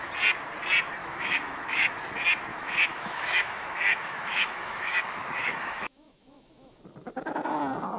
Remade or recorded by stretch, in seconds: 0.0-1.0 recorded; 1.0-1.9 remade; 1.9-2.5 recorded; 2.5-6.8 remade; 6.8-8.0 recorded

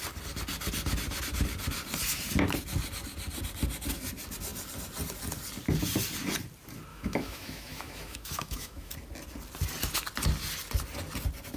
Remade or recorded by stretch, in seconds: 0.0-6.9 recorded; 6.9-8.9 remade; 8.9-11.6 recorded

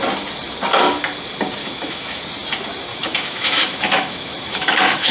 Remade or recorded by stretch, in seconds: 0.0-1.6 recorded; 1.6-2.2 remade; 2.2-2.9 recorded; 2.9-5.1 remade

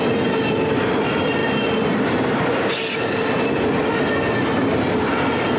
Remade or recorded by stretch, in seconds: 0.0-5.6 recorded

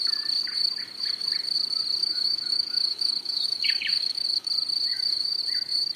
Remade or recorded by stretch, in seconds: 0.0-2.0 recorded; 2.0-4.5 remade; 4.5-4.9 recorded; 4.9-5.4 remade; 5.4-6.0 recorded